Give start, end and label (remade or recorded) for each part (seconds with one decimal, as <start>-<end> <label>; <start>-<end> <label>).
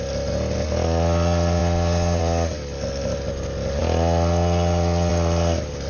0.0-5.9 recorded